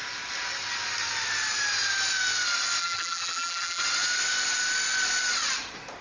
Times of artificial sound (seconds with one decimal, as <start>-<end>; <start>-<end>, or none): 2.8-3.8